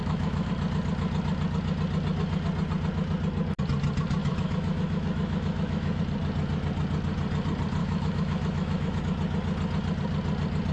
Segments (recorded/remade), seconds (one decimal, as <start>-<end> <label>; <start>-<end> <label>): 0.0-0.5 remade; 0.5-4.2 recorded; 4.2-6.0 remade; 6.0-7.8 recorded; 7.8-9.0 remade; 9.0-10.7 recorded